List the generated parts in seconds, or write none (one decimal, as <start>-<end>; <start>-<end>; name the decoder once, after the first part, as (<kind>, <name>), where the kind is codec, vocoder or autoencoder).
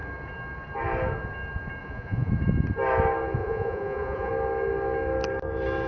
1.8-2.3 (vocoder, Vocos); 3.4-4.3